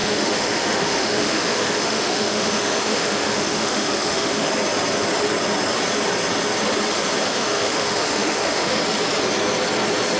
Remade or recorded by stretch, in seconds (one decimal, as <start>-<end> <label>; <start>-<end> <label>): 0.0-4.5 remade; 4.5-7.3 recorded; 7.3-8.8 remade; 8.8-10.2 recorded